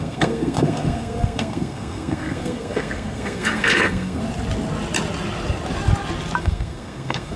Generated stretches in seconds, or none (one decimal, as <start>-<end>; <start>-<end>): 0.0-4.2; 6.4-7.4